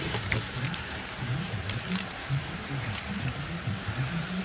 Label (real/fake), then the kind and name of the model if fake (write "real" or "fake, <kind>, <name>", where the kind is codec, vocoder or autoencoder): fake, vocoder, BigVGAN v2